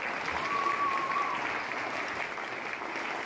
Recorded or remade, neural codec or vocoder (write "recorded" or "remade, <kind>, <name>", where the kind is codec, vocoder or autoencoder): recorded